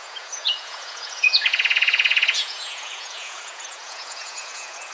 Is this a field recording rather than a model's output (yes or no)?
no